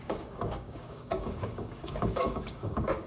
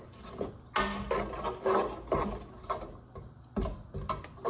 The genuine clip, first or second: second